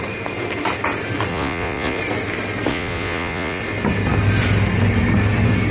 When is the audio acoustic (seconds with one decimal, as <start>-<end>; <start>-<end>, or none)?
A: 0.0-1.3; 2.0-2.7; 3.6-5.7